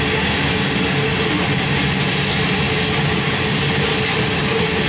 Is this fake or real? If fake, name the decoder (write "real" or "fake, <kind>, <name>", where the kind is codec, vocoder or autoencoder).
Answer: real